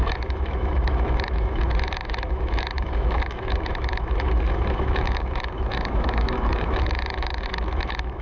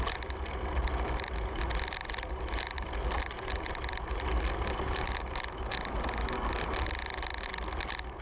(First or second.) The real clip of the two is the second